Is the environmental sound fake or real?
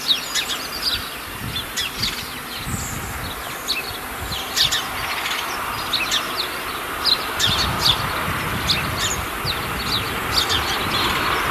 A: real